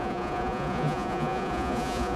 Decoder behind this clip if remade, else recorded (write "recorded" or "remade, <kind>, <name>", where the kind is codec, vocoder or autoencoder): remade, vocoder, Vocos